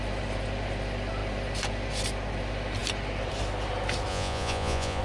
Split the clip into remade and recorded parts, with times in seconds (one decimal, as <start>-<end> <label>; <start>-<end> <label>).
0.0-4.1 recorded; 4.1-5.0 remade

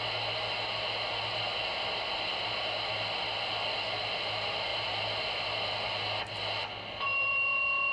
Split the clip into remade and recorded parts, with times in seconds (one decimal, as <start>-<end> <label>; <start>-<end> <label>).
0.0-4.7 recorded; 4.7-5.2 remade; 5.2-7.9 recorded

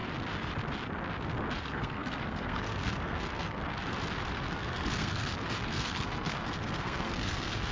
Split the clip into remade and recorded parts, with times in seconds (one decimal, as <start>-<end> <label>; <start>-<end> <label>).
0.0-1.6 recorded; 1.6-3.6 remade; 3.6-4.3 recorded; 4.3-7.7 remade

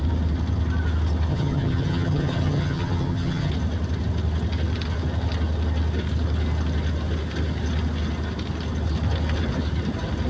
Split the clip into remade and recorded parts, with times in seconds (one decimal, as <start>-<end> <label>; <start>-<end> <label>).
0.0-1.3 recorded; 1.3-3.5 remade; 3.5-10.3 recorded